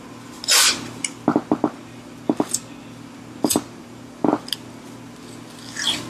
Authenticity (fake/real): real